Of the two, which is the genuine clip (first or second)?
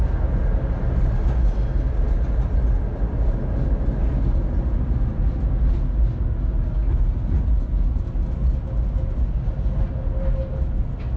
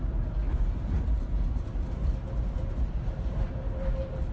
first